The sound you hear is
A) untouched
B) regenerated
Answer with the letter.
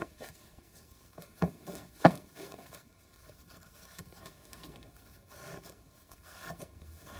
B